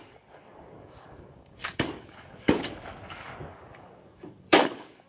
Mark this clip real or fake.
fake